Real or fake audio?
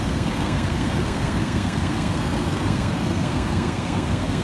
fake